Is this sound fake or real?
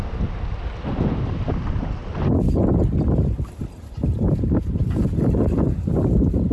real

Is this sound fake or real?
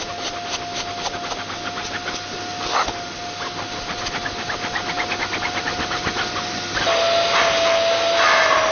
real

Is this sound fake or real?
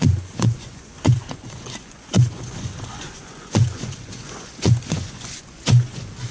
fake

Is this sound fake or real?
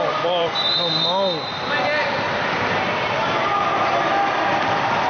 fake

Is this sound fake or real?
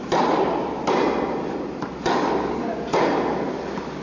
real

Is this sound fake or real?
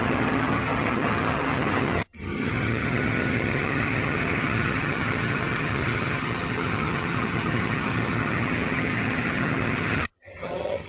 fake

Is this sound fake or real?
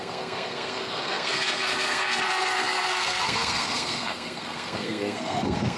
fake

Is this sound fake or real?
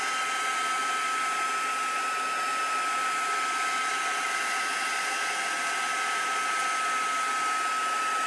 real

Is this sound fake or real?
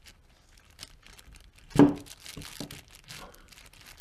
real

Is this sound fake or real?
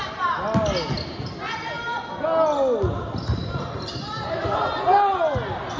real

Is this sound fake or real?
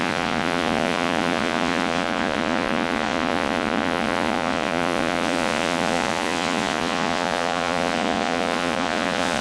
fake